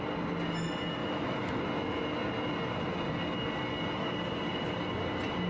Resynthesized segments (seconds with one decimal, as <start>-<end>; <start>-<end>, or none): 1.0-1.6